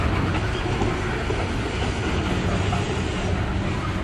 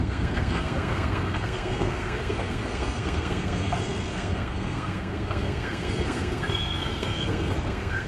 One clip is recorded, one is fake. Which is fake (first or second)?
second